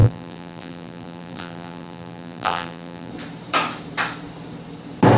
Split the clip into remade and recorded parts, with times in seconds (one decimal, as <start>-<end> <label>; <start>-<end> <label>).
0.0-3.1 remade; 3.1-5.2 recorded